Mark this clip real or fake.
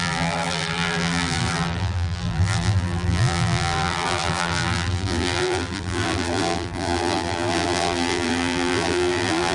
fake